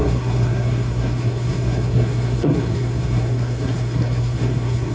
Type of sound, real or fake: fake